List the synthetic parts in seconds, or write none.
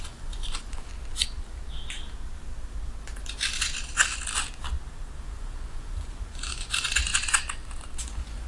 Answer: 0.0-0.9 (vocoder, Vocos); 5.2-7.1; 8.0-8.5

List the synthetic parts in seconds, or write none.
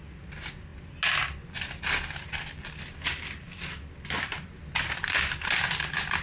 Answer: none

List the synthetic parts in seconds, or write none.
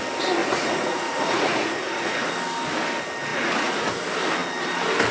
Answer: 0.4-2.3 (vocoder, Vocos); 3.3-3.9